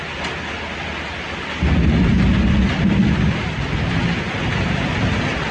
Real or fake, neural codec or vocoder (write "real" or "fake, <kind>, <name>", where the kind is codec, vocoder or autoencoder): real